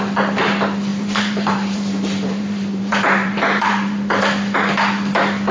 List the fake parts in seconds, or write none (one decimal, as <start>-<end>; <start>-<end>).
0.9-4.2